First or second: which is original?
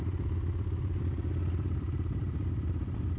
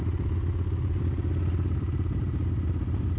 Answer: second